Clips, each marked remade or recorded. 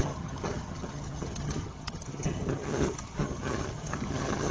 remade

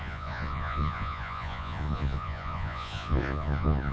remade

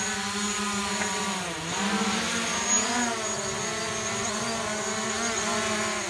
recorded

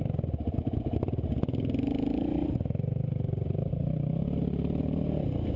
recorded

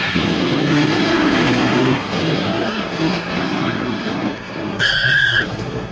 remade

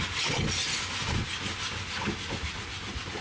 recorded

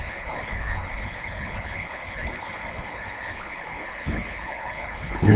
remade